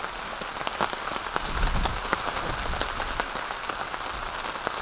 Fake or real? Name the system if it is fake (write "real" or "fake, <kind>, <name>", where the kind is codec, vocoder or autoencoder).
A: real